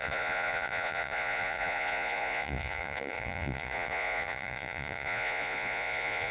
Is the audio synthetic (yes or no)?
yes